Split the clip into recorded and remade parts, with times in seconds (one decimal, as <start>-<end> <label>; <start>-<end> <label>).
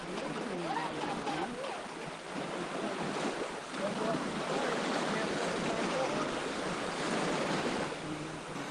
0.0-8.7 recorded